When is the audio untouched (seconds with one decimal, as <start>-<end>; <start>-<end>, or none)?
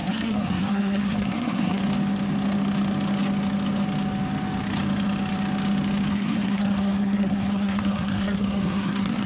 1.8-6.1